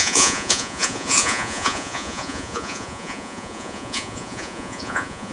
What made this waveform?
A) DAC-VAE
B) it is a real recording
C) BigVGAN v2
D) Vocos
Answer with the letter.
D